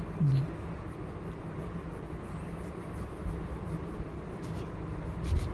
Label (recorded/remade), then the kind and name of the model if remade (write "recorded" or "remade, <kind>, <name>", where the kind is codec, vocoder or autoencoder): recorded